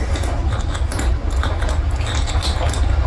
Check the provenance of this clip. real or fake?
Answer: real